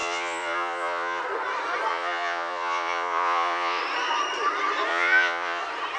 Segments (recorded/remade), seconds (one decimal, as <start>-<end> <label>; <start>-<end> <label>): 0.0-1.2 remade; 1.2-1.9 recorded; 1.9-3.8 remade; 3.8-4.9 recorded; 4.9-5.6 remade; 5.6-6.0 recorded